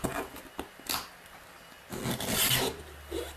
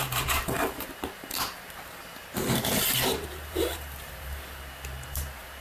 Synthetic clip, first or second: second